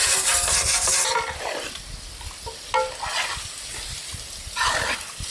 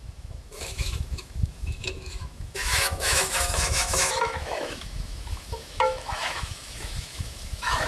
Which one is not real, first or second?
second